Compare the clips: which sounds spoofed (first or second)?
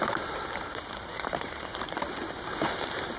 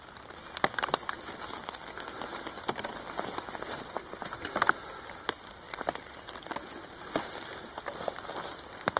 first